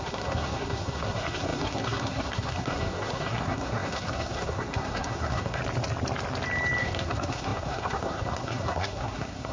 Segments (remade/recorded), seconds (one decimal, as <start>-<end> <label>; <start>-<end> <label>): 0.0-5.6 remade; 5.6-6.8 recorded; 6.8-9.5 remade